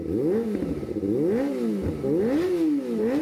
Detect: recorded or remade recorded